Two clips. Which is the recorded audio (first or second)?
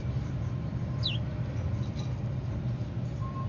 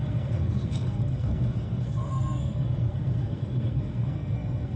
first